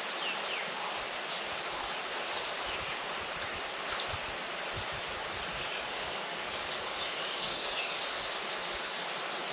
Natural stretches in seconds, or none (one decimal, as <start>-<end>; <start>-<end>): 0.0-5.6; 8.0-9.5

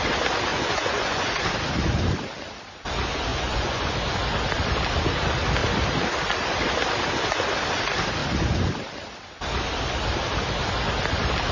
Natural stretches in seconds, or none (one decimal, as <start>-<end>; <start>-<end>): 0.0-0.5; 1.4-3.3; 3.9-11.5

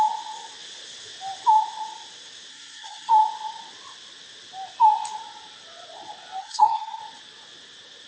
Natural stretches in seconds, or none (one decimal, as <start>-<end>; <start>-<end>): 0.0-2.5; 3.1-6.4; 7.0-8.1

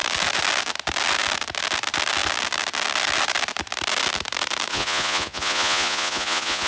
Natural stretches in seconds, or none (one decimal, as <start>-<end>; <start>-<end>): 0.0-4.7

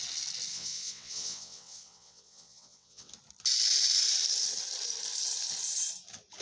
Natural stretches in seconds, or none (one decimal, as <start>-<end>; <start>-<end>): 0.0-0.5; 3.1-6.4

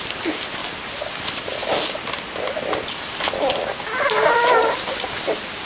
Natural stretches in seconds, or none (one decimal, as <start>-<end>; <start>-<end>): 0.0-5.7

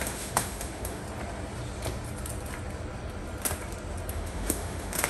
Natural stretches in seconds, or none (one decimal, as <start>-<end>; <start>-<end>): 1.0-4.1

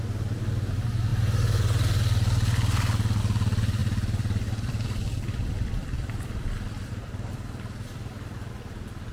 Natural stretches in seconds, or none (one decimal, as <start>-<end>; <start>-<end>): 0.0-3.8; 8.5-9.1